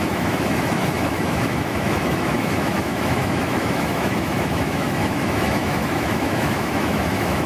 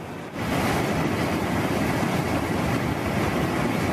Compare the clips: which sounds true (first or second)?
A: second